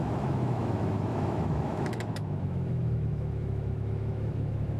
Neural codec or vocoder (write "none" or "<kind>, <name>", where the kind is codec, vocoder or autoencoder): autoencoder, DAC-VAE